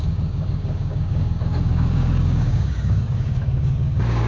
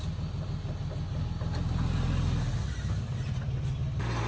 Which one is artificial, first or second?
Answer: first